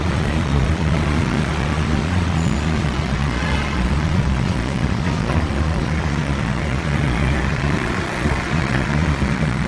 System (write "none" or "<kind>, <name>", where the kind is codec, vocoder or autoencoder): vocoder, Vocos